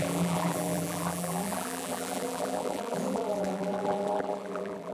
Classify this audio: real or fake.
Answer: fake